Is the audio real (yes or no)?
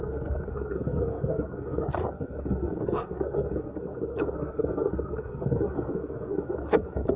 no